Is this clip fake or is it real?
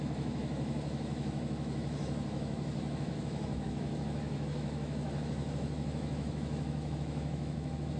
fake